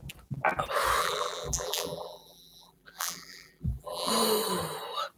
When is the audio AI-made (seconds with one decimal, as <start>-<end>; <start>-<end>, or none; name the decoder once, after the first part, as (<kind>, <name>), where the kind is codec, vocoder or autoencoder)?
1.0-4.1 (vocoder, BigVGAN v2)